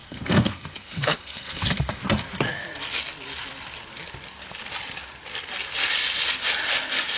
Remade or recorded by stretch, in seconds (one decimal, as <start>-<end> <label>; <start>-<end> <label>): 0.0-2.0 remade; 2.0-7.2 recorded